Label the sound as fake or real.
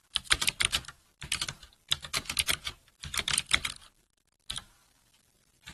fake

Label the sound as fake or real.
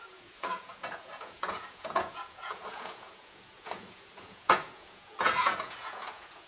fake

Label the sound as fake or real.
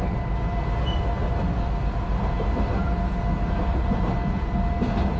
real